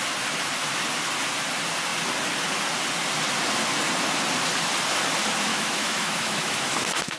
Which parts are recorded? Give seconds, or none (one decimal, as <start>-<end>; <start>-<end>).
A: 0.0-5.5